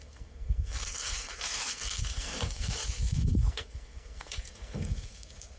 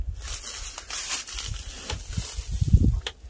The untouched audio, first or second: second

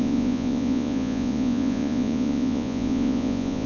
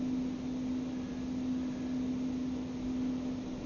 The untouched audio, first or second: second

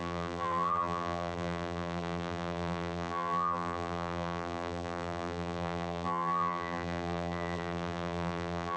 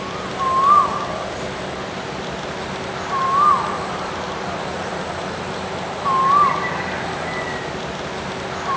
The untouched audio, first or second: second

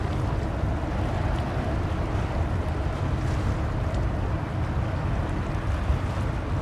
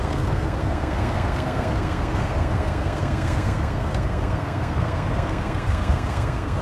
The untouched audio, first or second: first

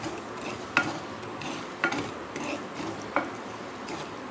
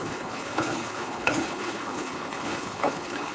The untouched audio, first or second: first